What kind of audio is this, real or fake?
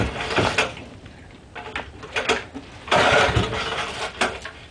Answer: real